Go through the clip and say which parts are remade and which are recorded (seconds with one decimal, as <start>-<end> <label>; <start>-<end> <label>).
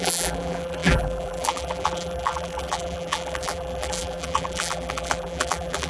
0.0-5.9 remade